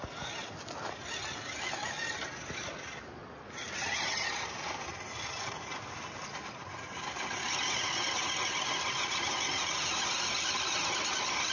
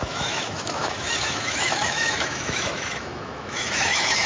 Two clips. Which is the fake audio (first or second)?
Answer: second